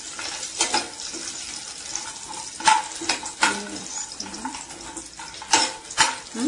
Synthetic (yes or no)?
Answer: no